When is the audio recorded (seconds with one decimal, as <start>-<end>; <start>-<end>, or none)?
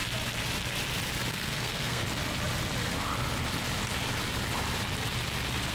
0.0-1.3; 2.0-5.7